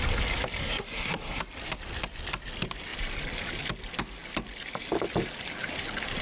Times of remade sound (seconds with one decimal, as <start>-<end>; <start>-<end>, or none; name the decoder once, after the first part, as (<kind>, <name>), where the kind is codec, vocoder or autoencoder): 0.6-1.4 (codec, SNAC)